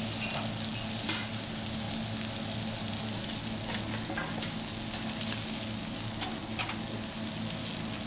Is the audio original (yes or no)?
yes